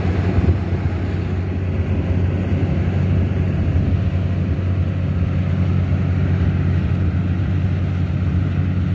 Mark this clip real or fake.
real